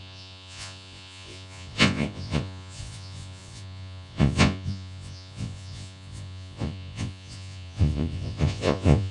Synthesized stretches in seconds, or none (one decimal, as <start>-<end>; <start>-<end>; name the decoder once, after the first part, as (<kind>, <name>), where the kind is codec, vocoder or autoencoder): 0.0-9.1 (vocoder, Vocos)